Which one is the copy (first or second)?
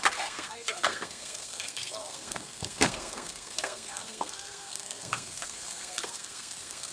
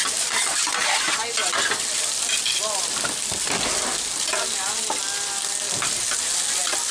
first